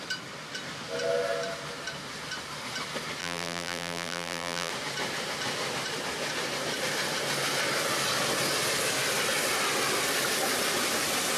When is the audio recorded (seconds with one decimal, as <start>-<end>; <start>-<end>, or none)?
0.0-3.2; 4.7-11.4